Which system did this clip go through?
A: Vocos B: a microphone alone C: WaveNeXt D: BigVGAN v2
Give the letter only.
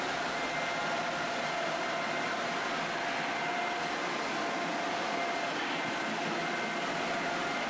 B